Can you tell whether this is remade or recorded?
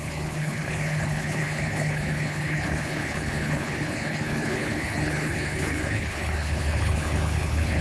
remade